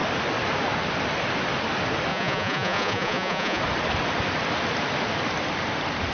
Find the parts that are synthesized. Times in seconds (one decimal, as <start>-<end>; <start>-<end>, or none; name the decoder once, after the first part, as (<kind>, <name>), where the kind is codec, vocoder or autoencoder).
2.1-3.6 (vocoder, Vocos)